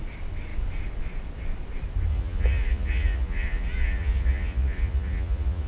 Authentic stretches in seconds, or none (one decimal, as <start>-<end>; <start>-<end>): 0.0-2.1